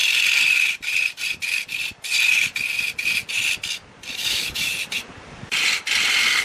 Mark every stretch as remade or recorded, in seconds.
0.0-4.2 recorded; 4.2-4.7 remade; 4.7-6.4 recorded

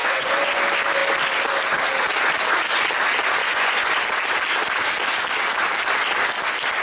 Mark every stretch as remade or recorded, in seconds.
0.0-0.6 remade; 0.6-3.4 recorded; 3.4-3.9 remade; 3.9-6.8 recorded

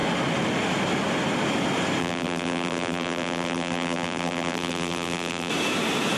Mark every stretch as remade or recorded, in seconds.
0.0-2.0 recorded; 2.0-5.5 remade; 5.5-6.2 recorded